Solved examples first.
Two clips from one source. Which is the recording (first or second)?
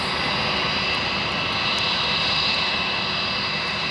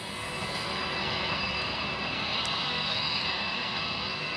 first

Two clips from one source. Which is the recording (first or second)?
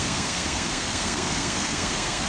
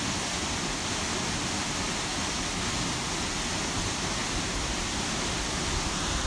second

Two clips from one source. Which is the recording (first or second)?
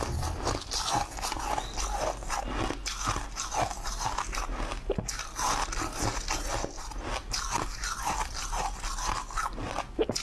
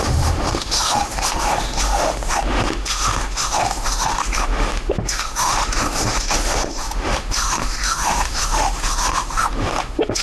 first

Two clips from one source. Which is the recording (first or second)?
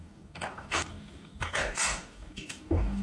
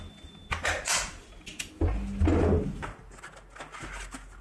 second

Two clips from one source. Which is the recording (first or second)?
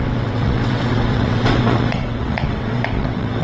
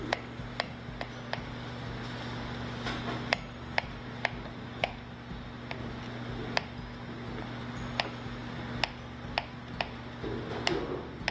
second